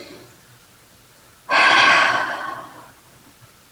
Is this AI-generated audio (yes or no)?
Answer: no